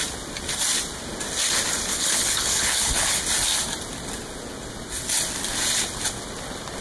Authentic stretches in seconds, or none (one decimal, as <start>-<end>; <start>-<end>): 0.0-1.9; 3.2-6.8